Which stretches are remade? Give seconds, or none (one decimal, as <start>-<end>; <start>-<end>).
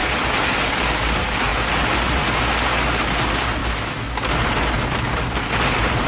none